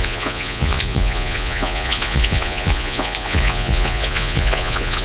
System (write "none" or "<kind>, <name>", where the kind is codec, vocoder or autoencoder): vocoder, Vocos